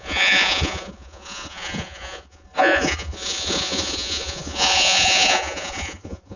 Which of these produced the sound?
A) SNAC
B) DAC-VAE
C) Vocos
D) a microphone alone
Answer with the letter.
C